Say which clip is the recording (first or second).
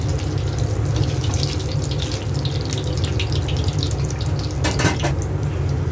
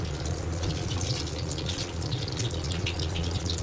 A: first